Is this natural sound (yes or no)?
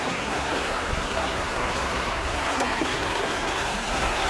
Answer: no